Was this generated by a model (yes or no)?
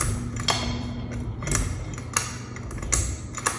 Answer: no